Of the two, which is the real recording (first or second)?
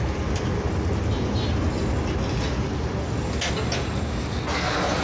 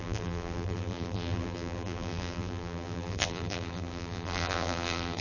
first